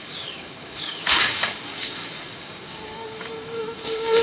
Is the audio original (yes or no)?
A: no